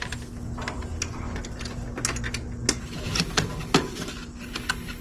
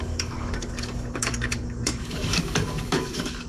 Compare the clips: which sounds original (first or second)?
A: first